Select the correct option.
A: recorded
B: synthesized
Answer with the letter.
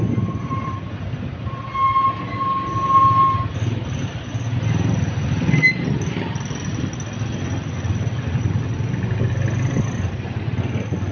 A